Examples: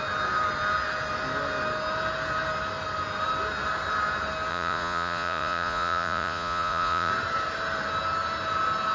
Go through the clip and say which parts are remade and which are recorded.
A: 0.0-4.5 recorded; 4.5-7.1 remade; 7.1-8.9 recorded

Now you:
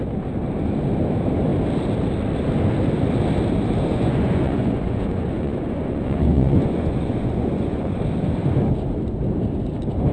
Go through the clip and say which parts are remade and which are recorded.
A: 0.0-3.9 recorded; 3.9-8.0 remade; 8.0-10.1 recorded